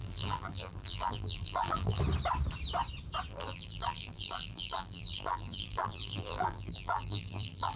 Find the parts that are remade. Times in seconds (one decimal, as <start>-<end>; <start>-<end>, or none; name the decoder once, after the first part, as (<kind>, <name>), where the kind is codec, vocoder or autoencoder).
0.0-2.0 (vocoder, BigVGAN v2); 3.3-7.8